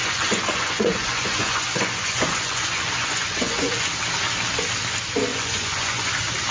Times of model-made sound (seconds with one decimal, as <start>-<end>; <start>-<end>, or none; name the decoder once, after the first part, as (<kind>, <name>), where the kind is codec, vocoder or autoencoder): 0.0-3.9 (vocoder, Vocos); 5.3-6.1